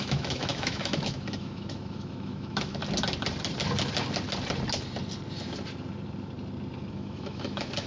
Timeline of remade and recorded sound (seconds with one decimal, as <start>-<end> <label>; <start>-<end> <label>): 0.0-2.8 remade; 2.8-6.9 recorded; 6.9-7.9 remade